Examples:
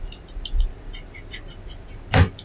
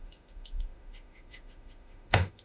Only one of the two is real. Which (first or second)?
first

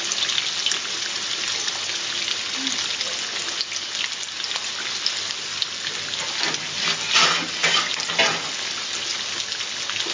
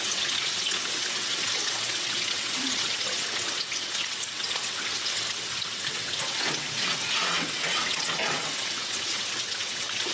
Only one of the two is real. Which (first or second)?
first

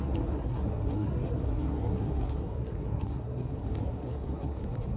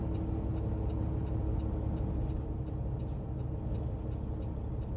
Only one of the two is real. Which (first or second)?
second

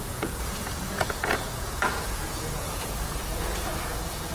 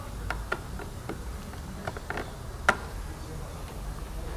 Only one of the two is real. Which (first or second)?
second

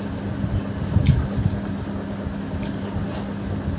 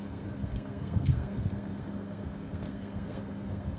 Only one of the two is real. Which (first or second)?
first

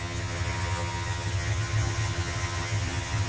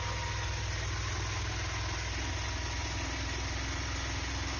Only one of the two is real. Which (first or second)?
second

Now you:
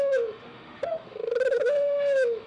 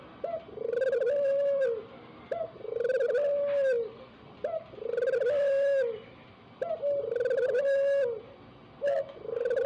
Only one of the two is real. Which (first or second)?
second